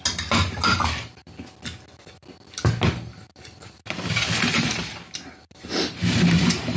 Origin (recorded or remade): recorded